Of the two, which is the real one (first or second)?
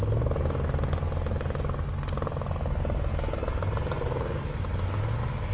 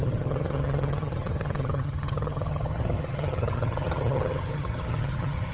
first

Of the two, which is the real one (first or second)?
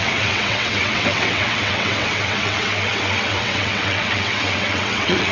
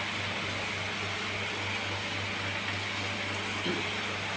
second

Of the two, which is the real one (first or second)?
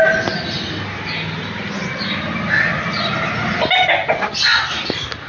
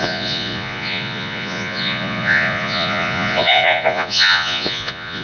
first